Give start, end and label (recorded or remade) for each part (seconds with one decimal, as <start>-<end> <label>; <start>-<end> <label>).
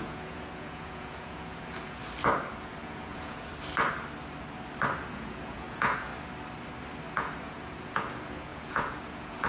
0.0-2.0 remade; 2.0-2.6 recorded; 2.6-3.5 remade; 3.5-5.1 recorded; 5.1-6.1 remade; 6.1-7.1 recorded; 7.1-9.5 remade